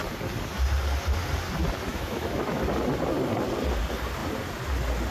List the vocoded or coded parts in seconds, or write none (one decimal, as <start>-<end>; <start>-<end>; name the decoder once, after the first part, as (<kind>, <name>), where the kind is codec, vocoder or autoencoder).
1.9-2.6 (autoencoder, DAC-VAE)